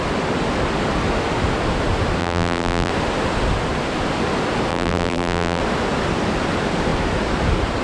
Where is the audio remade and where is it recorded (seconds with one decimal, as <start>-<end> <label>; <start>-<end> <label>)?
0.0-2.2 recorded; 2.2-2.9 remade; 2.9-4.7 recorded; 4.7-5.6 remade; 5.6-7.8 recorded